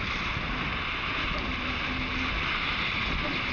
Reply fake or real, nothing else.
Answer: real